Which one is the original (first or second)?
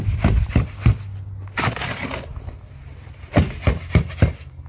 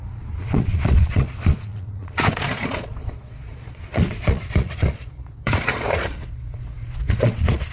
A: first